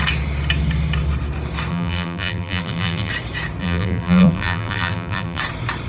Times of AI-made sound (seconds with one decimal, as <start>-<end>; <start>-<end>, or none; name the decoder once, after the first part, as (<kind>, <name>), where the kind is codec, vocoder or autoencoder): 1.7-3.1 (vocoder, BigVGAN v2); 3.6-5.4